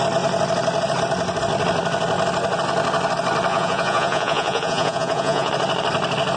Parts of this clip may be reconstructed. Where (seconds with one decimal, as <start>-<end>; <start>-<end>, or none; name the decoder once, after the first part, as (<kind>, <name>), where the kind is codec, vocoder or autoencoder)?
3.5-5.5 (vocoder, Vocos)